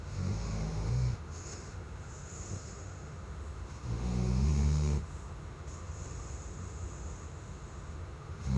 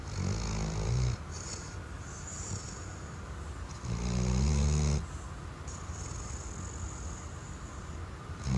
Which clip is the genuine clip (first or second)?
second